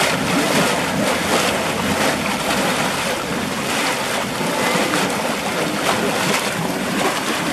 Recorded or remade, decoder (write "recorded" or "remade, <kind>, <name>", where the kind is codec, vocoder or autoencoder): recorded